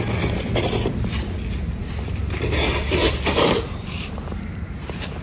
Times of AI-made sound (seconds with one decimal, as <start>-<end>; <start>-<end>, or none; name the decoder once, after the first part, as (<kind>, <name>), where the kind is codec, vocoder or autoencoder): 3.0-4.5 (vocoder, BigVGAN v2)